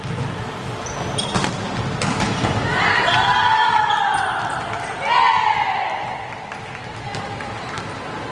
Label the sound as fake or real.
real